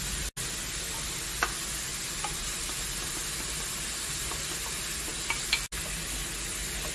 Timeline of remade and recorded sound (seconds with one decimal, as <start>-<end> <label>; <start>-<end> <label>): 0.0-6.9 recorded